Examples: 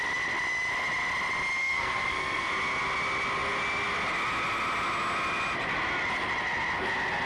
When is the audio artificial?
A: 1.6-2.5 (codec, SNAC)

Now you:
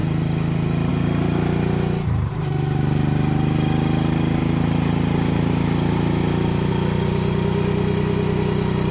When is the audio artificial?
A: none

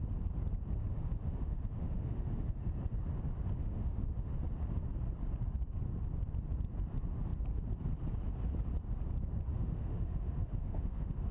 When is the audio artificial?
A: 0.9-2.6 (autoencoder, DAC-VAE); 3.6-4.3; 9.5-11.3

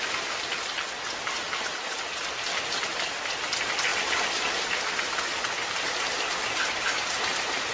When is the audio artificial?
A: none

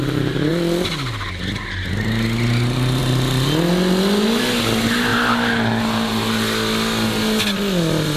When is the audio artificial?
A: none

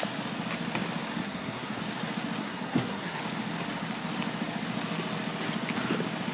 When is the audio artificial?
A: 1.2-1.8 (codec, SNAC); 2.4-3.2